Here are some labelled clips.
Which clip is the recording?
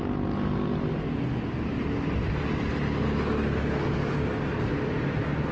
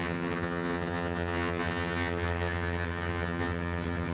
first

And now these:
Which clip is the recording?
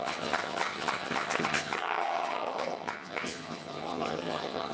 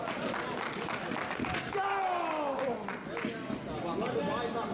second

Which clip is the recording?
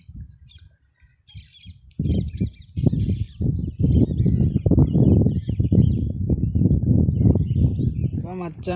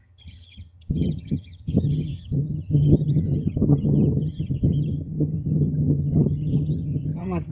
first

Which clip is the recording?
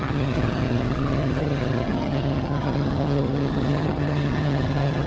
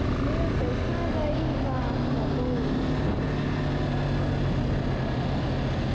second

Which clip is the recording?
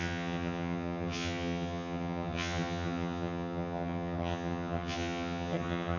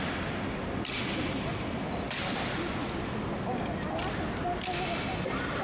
second